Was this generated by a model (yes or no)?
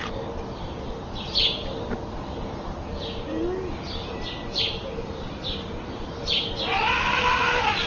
no